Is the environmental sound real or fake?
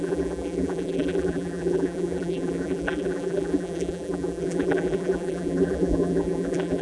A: fake